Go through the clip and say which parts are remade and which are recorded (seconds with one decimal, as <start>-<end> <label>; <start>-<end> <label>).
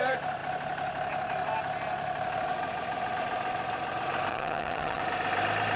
0.0-4.3 recorded; 4.3-5.0 remade; 5.0-5.8 recorded